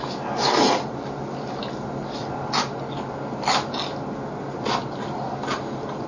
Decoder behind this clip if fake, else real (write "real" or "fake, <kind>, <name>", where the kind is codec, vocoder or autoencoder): real